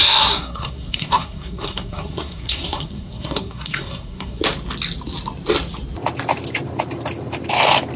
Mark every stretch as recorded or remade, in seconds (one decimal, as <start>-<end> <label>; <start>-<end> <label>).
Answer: 0.0-4.4 remade; 4.4-8.0 recorded